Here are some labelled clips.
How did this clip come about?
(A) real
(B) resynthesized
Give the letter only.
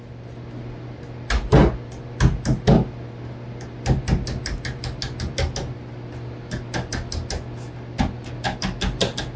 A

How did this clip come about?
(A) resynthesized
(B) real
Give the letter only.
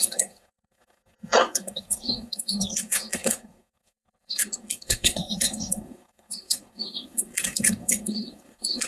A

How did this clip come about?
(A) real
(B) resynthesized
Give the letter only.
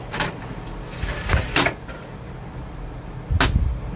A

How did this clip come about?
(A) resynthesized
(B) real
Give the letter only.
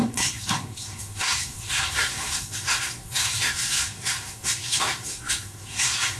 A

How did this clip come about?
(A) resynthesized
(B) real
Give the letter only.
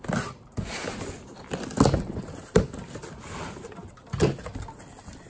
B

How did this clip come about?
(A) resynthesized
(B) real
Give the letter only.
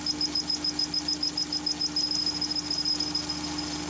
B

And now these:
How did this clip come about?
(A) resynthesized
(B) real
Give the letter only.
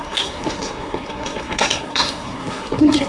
A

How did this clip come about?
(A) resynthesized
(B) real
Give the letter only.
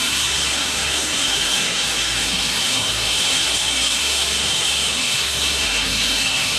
A